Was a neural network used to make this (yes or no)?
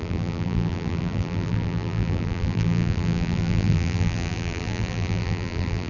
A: yes